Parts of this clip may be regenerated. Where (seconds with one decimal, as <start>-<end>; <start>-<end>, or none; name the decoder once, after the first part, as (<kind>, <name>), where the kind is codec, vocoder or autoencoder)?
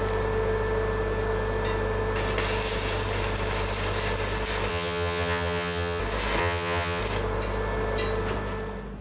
4.7-6.0 (vocoder, HiFi-GAN); 6.4-7.0